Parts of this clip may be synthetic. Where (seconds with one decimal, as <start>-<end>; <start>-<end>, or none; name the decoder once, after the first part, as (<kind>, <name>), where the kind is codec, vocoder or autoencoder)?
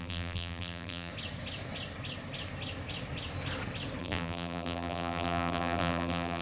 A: 0.0-1.1 (vocoder, BigVGAN v2); 4.0-6.4